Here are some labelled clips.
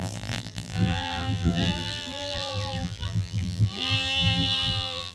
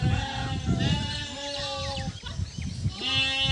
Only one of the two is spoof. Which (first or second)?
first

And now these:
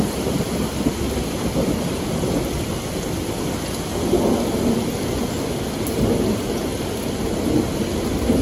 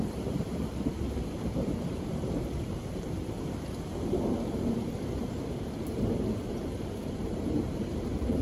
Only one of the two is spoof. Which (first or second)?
second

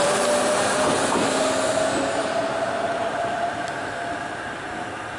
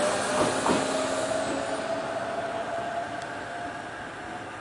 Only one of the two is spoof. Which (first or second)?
first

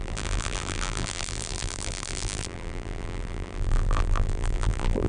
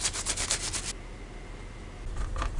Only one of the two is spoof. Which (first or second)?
first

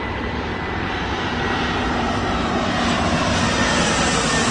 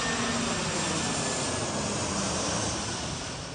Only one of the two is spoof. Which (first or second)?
first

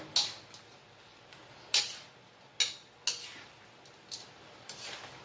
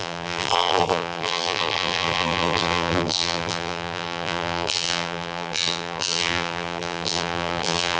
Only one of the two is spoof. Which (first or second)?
second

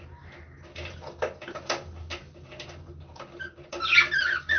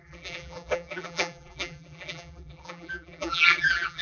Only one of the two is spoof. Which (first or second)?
second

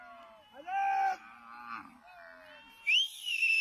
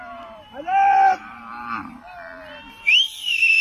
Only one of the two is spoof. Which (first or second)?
second